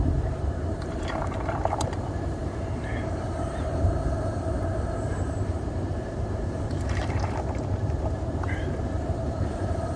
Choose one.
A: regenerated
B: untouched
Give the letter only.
A